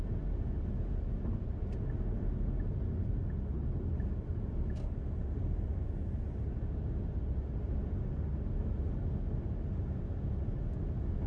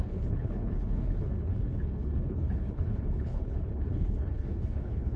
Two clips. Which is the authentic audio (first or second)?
first